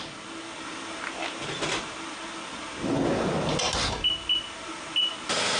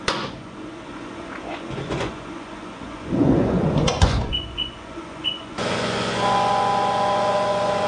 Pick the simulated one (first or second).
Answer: second